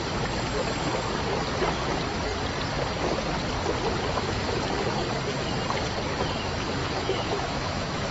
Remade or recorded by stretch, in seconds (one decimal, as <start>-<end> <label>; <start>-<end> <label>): 0.0-6.8 recorded; 6.8-8.1 remade